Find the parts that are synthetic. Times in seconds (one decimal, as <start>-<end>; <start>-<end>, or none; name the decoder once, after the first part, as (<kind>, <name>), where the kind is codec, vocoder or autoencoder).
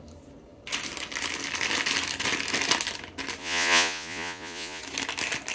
3.4-4.8 (vocoder, Vocos)